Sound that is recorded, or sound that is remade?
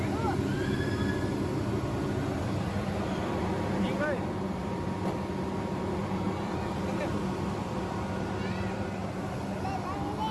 recorded